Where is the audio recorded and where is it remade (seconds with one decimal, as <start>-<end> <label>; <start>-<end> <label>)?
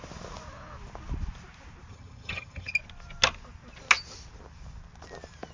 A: 0.0-1.9 recorded; 1.9-2.7 remade; 2.7-5.5 recorded